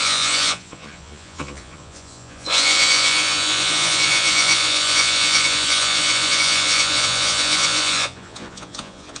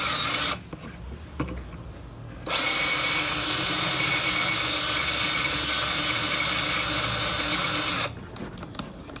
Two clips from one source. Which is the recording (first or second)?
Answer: second